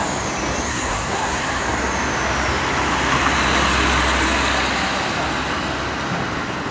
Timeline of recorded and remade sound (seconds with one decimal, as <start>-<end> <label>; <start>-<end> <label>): 0.0-0.7 recorded; 0.7-1.6 remade; 1.6-6.7 recorded